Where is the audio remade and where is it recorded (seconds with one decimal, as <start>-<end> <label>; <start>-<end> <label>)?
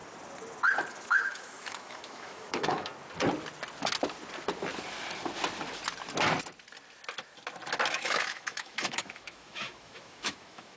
0.0-0.9 recorded; 0.9-2.9 remade; 2.9-7.9 recorded; 7.9-10.8 remade